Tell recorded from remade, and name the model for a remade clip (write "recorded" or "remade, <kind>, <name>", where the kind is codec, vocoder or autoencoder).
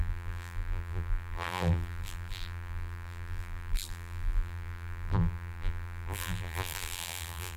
remade, vocoder, BigVGAN v2